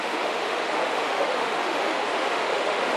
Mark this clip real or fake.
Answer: fake